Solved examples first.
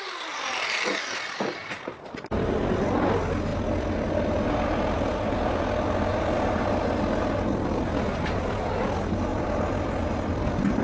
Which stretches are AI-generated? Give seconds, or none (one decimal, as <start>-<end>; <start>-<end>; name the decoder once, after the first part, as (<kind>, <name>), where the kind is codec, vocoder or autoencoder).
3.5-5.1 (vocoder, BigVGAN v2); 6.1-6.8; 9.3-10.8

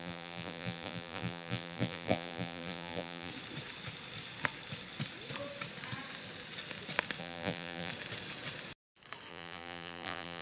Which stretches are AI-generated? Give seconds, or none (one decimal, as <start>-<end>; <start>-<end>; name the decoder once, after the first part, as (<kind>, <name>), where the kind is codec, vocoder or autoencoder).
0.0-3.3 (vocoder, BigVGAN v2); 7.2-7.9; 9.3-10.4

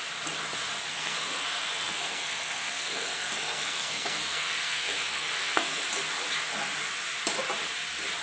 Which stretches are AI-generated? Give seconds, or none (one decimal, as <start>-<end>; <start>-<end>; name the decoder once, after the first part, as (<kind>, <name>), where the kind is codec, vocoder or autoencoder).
0.9-5.8 (codec, SNAC)